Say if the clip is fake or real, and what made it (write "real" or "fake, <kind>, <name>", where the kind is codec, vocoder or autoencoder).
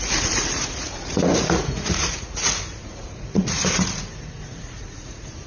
fake, vocoder, Vocos